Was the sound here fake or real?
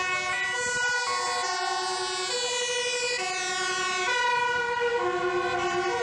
real